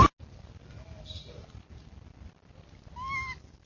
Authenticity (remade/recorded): recorded